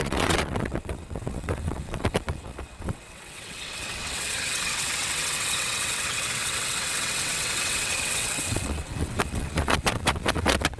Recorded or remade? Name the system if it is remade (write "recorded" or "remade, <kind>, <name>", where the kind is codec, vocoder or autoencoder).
remade, vocoder, WaveNeXt